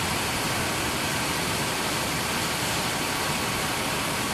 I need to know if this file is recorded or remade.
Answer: recorded